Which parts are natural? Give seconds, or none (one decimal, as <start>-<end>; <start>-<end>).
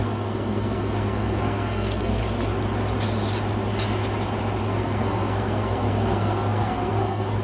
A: 2.2-4.6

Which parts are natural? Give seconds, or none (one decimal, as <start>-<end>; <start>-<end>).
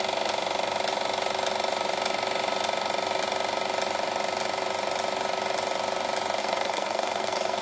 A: 0.0-6.4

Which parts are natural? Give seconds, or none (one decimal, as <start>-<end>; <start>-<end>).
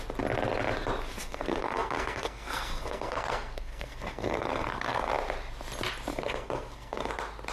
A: 0.0-1.2; 5.1-6.1; 7.1-7.5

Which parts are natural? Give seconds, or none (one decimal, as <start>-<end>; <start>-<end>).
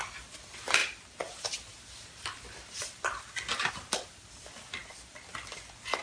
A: 0.0-6.0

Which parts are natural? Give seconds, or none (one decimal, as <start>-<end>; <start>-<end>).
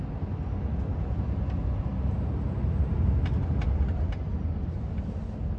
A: 0.0-5.6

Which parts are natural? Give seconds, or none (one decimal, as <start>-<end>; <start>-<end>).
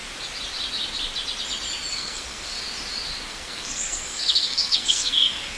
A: 0.0-1.9; 2.6-3.3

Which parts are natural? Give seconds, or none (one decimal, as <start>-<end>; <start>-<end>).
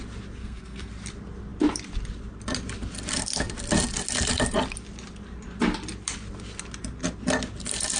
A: 0.0-0.4; 0.9-8.0